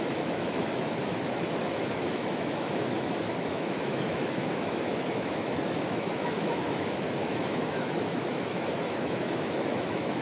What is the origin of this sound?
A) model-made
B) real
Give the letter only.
A